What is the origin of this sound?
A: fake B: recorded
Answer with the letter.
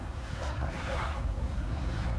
A